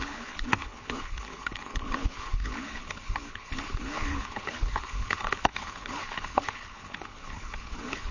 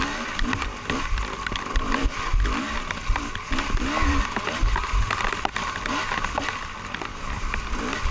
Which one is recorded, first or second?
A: second